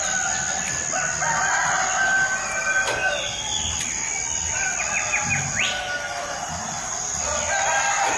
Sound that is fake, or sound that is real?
real